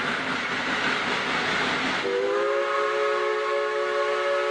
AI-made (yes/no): no